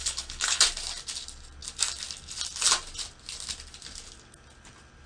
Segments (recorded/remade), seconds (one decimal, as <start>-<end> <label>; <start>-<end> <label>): 0.0-0.6 remade; 0.6-5.1 recorded